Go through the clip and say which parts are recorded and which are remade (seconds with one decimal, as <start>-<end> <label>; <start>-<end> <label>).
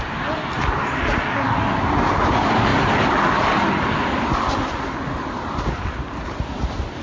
0.0-7.0 recorded